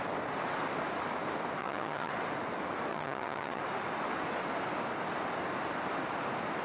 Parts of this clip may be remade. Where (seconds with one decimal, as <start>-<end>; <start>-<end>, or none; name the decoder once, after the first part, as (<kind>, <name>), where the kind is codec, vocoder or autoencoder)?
1.6-2.1 (vocoder, HiFi-GAN); 2.9-3.6